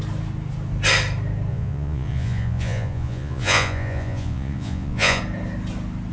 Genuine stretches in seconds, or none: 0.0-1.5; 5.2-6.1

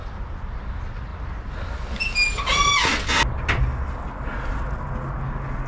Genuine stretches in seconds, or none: 0.0-5.7

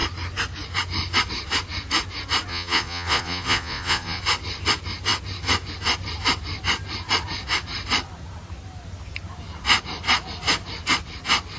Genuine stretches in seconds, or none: 0.0-2.5; 4.2-11.6

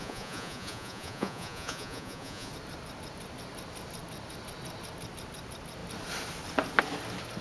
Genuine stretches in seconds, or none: 2.5-7.4

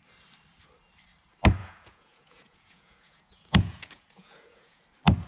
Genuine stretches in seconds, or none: 0.0-1.6; 4.8-5.3

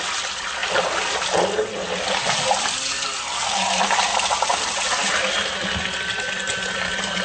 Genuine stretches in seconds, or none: 0.0-7.2

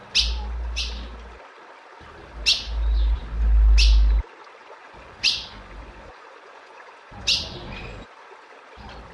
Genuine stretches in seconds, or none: 0.0-4.6; 8.1-9.1